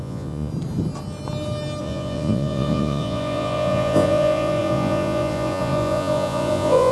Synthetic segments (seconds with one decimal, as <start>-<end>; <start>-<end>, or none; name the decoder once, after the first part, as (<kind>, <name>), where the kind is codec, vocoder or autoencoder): 0.0-0.5 (vocoder, Vocos); 1.8-6.9